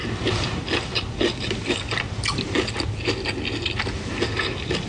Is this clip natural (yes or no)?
yes